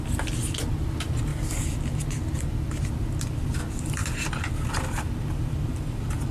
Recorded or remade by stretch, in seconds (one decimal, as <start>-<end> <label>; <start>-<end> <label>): 0.0-6.3 recorded